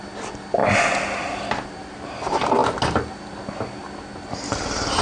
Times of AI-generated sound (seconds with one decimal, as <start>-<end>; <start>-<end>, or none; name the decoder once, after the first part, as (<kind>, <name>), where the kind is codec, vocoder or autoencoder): none